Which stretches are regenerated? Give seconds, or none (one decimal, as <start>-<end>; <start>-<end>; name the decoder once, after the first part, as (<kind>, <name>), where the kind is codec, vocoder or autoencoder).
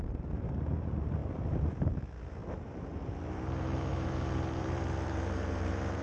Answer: 0.0-6.0 (vocoder, BigVGAN v2)